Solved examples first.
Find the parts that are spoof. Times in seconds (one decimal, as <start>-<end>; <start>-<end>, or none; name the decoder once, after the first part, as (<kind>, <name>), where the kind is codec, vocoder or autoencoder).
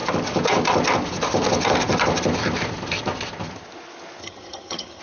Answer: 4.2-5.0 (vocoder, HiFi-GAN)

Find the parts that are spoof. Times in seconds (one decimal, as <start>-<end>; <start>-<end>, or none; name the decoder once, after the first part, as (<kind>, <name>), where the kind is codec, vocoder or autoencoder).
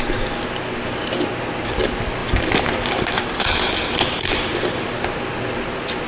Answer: none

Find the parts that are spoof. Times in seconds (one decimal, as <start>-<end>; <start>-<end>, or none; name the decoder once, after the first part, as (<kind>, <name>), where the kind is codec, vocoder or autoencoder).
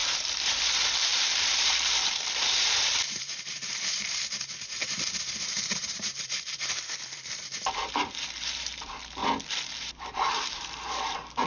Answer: 0.0-9.2 (vocoder, BigVGAN v2); 9.8-11.5